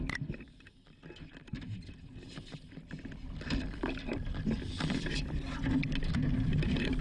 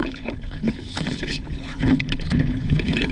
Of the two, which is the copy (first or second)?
second